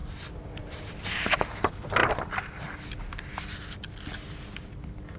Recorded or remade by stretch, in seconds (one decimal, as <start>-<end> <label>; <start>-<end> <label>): 0.0-5.2 recorded